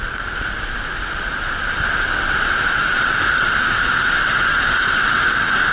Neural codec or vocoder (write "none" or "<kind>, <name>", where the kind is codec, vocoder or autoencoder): vocoder, BigVGAN v2